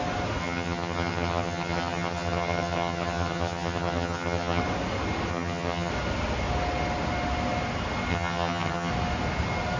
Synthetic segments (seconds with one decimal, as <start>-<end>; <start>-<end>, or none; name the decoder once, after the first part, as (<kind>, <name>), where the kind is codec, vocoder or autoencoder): 0.4-4.6 (vocoder, HiFi-GAN); 5.3-5.9; 8.1-8.9